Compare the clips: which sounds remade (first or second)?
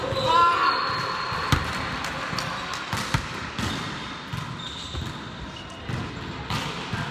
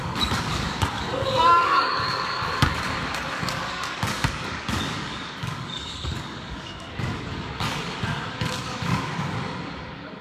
second